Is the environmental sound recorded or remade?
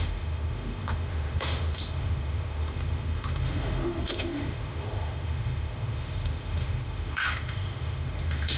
remade